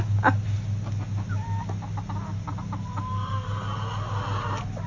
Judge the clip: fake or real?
real